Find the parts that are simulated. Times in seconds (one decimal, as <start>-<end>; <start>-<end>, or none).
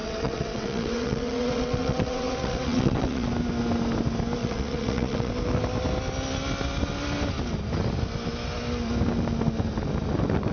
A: 0.0-3.3; 4.4-5.3